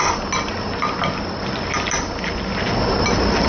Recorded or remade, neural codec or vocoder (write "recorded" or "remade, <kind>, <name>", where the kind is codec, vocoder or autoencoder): recorded